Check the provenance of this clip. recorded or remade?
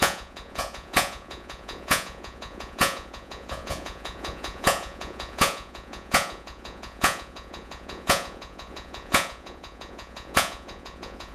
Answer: remade